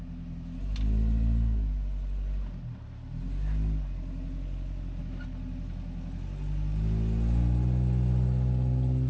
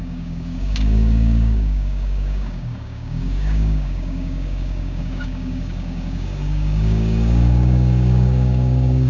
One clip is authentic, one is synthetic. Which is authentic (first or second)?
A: first